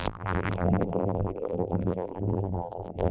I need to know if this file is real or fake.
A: fake